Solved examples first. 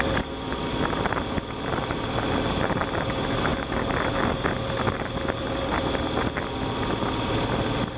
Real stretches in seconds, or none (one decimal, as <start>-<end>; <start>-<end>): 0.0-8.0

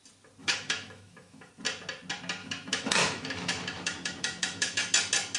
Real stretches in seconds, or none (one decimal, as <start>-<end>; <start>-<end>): 0.0-0.4; 1.5-2.4; 4.8-5.4

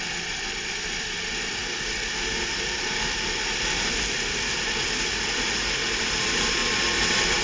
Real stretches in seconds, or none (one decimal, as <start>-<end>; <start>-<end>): 0.0-7.4

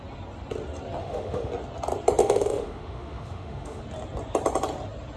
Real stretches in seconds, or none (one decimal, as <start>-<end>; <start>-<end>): 0.0-1.0; 1.5-2.2; 3.8-5.2